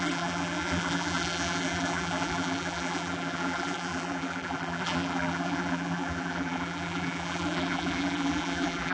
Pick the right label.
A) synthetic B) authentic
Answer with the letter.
A